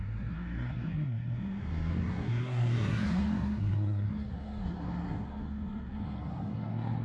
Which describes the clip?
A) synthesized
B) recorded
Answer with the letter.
A